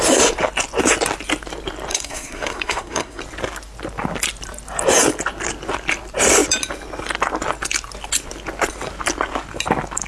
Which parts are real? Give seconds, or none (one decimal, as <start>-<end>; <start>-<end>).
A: 0.0-1.9; 3.2-10.1